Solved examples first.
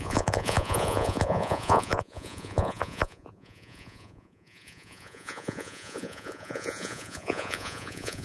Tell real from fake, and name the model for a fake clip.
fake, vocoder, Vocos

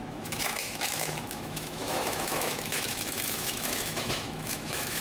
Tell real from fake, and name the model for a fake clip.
fake, autoencoder, DAC-VAE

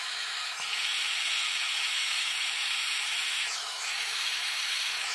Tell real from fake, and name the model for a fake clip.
fake, autoencoder, DAC-VAE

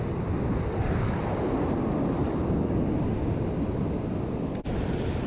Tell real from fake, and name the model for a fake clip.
real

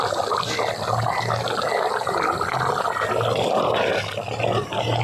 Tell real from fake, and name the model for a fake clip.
real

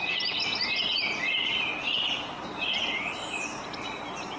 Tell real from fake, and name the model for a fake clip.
real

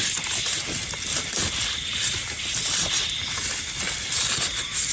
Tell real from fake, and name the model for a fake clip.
real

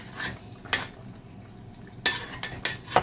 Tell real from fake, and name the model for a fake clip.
real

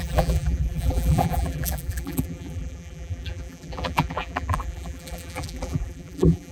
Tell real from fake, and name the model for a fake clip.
fake, vocoder, BigVGAN v2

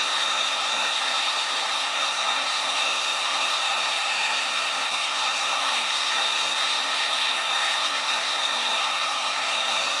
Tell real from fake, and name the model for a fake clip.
fake, codec, SNAC